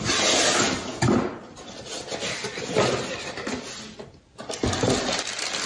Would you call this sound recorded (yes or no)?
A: yes